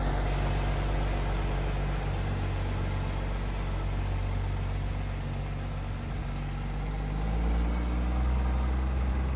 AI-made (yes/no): no